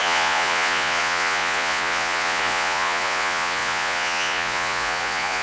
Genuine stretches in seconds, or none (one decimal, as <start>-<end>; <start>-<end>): none